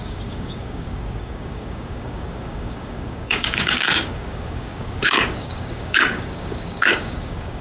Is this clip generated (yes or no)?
yes